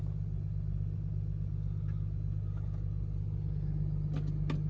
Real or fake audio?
real